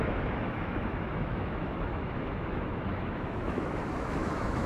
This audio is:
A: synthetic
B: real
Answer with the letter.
A